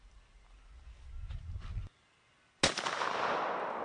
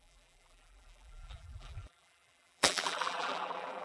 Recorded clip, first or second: first